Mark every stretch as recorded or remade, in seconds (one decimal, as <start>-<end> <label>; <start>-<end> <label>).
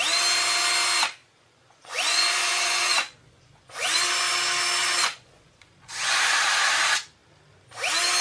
0.0-1.2 recorded; 1.2-4.0 remade; 4.0-4.8 recorded; 4.8-6.3 remade; 6.3-8.2 recorded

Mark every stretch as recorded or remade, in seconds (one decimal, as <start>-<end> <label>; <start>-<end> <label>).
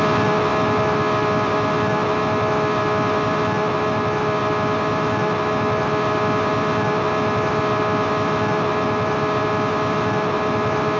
0.0-11.0 recorded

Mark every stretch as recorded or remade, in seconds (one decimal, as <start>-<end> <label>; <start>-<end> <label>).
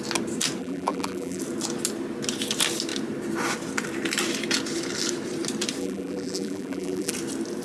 0.0-0.6 recorded; 0.6-1.4 remade; 1.4-5.8 recorded; 5.8-7.1 remade; 7.1-7.6 recorded